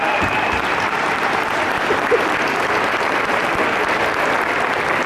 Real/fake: real